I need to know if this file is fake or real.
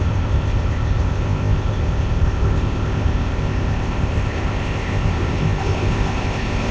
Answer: fake